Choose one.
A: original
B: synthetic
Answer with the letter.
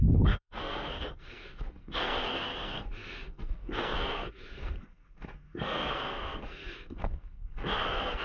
B